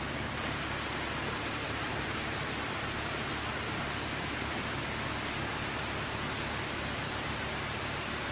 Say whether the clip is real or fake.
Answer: real